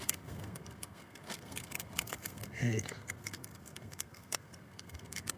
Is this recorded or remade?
remade